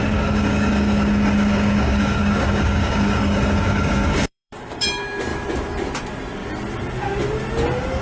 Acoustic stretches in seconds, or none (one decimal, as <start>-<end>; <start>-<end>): 4.8-8.0